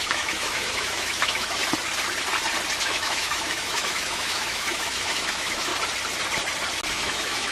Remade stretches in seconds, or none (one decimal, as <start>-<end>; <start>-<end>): 0.0-1.6; 2.8-5.7; 6.9-7.5